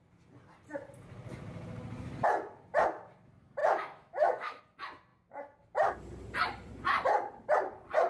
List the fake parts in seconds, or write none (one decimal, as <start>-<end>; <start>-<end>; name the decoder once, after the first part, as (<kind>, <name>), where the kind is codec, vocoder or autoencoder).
3.6-4.6 (autoencoder, DAC-VAE)